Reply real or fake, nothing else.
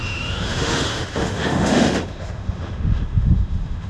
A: fake